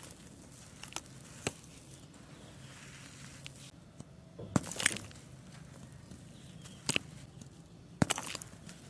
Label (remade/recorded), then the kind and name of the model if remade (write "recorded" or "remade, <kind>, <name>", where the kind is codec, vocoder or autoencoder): recorded